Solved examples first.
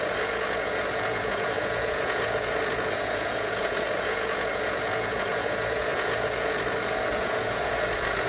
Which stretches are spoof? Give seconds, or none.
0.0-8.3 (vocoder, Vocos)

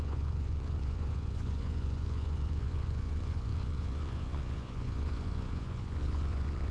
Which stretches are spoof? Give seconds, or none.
0.0-6.7 (vocoder, Vocos)

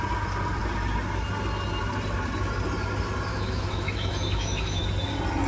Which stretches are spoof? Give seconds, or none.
3.3-4.9 (autoencoder, DAC-VAE)

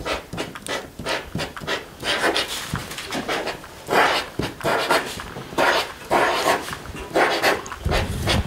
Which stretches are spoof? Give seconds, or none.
2.8-7.9 (vocoder, BigVGAN v2)

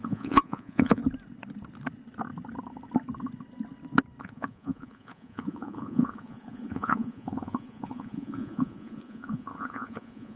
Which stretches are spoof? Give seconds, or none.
0.0-1.0 (vocoder, Vocos); 4.2-10.4